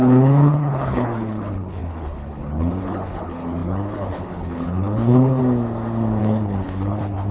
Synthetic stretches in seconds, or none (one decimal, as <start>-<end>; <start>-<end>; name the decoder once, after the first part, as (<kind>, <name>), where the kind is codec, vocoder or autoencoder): 0.0-5.4 (codec, HILCodec); 6.2-7.3